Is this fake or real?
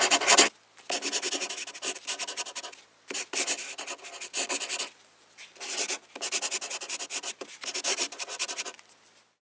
real